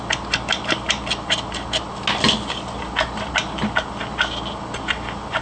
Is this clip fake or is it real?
real